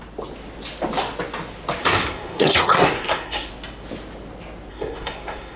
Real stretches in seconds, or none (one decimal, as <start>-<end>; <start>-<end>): 0.0-1.8; 3.5-4.7

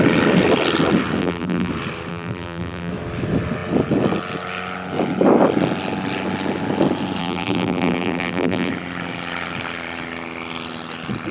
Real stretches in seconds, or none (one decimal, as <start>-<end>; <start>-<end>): 0.0-1.2; 1.7-2.1; 2.9-7.2; 8.7-11.3

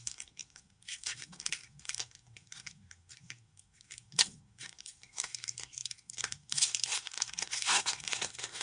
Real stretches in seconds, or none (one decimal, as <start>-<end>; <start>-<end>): none

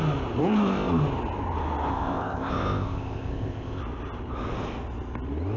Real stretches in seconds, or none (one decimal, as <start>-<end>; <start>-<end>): 0.0-0.4; 1.0-1.9; 3.8-5.6

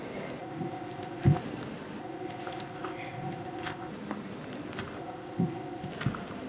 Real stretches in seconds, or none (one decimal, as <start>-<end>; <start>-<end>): 0.0-0.4; 1.4-2.0; 3.9-5.0; 5.9-6.5